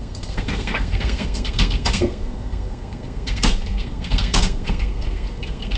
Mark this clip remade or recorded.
remade